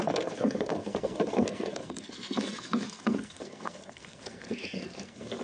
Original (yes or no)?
no